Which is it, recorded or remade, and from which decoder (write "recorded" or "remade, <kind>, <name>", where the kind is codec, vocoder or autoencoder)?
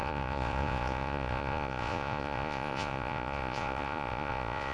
remade, vocoder, Vocos